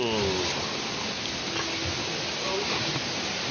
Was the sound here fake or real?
real